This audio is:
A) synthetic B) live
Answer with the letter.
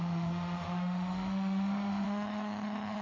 A